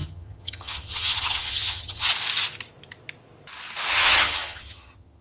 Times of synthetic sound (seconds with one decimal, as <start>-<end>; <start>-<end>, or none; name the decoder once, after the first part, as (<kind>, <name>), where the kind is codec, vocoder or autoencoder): 0.0-2.1 (vocoder, HiFi-GAN); 3.9-5.2